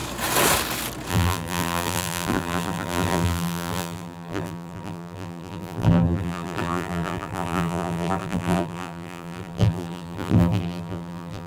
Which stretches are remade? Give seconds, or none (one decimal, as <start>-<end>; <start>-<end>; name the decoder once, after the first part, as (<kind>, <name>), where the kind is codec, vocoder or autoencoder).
1.1-11.5 (vocoder, BigVGAN v2)